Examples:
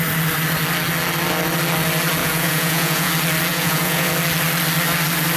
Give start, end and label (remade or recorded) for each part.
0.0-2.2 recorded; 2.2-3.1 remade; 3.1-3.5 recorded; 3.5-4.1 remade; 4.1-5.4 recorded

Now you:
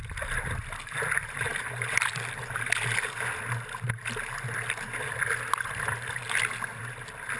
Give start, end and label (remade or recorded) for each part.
0.0-7.4 recorded

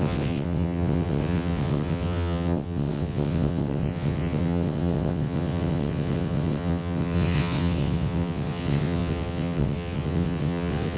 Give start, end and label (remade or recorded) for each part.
0.0-11.0 remade

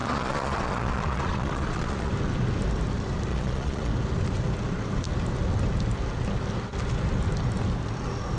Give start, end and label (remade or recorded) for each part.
0.0-2.1 remade; 2.1-3.3 recorded; 3.3-3.9 remade; 3.9-8.4 recorded

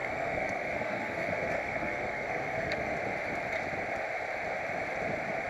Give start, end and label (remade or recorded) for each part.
0.0-2.9 remade; 2.9-5.5 recorded

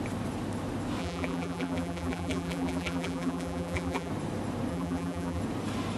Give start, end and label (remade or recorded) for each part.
0.0-1.0 recorded; 1.0-4.1 remade; 4.1-4.7 recorded; 4.7-5.4 remade; 5.4-6.0 recorded